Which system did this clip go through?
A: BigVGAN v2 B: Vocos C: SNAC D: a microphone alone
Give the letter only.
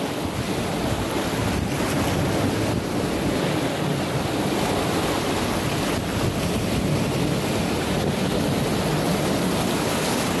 D